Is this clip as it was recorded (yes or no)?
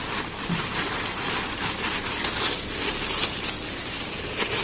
no